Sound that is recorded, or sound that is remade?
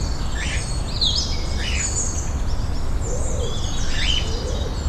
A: recorded